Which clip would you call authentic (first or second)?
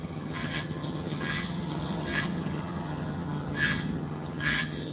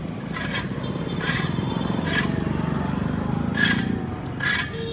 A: second